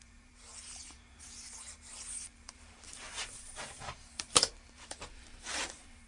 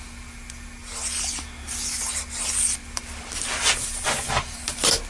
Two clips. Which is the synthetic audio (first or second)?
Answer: first